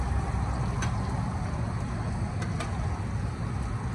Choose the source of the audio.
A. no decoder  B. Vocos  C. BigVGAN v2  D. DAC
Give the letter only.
A